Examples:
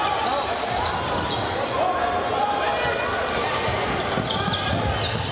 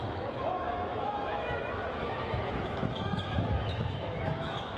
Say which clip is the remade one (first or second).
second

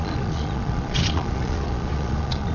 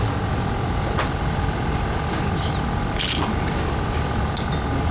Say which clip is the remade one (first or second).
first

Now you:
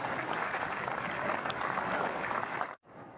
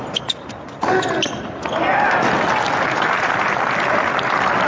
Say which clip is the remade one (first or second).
first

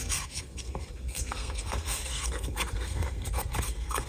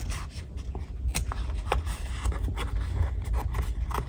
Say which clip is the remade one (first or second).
first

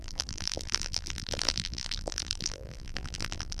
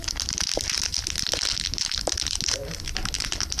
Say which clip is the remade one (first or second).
first